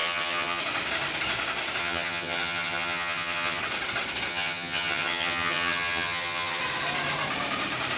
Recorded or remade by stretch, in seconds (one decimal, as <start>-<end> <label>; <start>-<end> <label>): 0.0-0.6 remade; 0.6-1.8 recorded; 1.8-3.6 remade; 3.6-4.3 recorded; 4.3-6.6 remade; 6.6-8.0 recorded